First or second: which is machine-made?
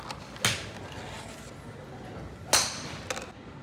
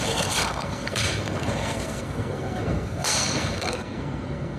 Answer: second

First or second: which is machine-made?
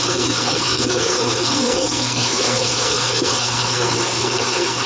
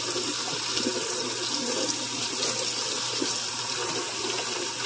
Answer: first